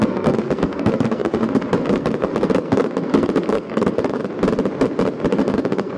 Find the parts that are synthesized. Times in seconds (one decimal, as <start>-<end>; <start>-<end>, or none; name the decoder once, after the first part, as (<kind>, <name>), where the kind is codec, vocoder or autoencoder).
0.0-4.2 (codec, SNAC); 5.3-6.0